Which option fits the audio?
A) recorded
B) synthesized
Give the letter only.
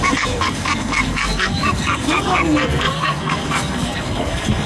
B